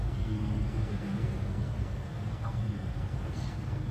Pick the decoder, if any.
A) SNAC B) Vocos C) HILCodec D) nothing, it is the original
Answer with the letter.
A